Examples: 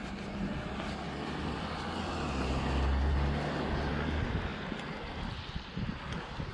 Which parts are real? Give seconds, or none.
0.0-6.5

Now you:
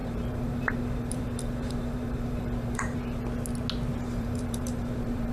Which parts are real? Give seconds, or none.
3.2-3.9

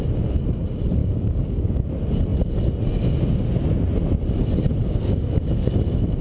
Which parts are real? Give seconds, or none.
0.0-1.0; 1.9-4.8; 5.8-6.2

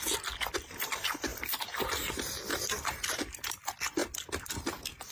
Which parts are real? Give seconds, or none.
0.0-1.3; 2.1-2.5; 3.1-5.1

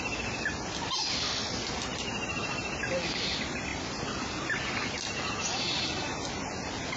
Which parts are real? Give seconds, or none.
0.0-7.0

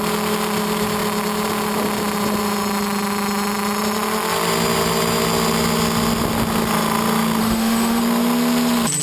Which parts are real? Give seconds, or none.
0.0-7.4; 8.0-9.0

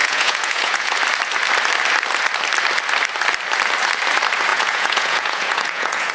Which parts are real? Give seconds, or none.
0.9-4.5